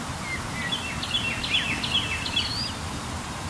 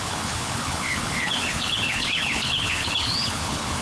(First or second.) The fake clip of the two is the second